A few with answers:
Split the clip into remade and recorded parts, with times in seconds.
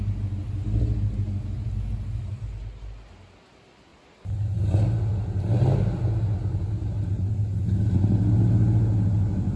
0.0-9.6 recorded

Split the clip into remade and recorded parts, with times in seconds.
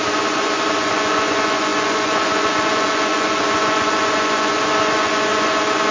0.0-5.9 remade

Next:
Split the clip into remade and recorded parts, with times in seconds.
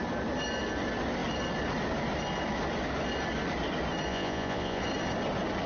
0.0-4.1 recorded; 4.1-4.8 remade; 4.8-5.7 recorded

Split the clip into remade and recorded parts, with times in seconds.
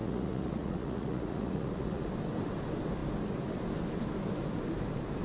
0.0-2.1 remade; 2.1-5.2 recorded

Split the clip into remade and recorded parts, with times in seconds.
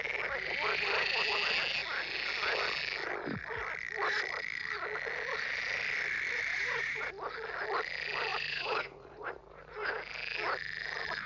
0.0-6.5 recorded; 6.5-7.1 remade; 7.1-8.3 recorded; 8.3-9.4 remade; 9.4-11.3 recorded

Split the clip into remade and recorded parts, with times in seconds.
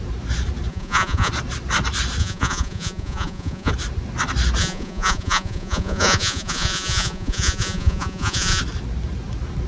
0.0-0.7 recorded; 0.7-1.3 remade; 1.3-2.2 recorded; 2.2-3.7 remade; 3.7-4.6 recorded; 4.6-8.6 remade; 8.6-9.7 recorded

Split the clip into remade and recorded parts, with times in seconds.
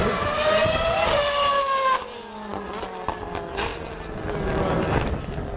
0.0-5.6 recorded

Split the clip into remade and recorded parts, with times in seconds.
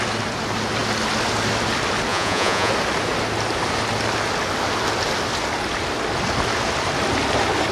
0.0-2.1 recorded; 2.1-2.7 remade; 2.7-7.7 recorded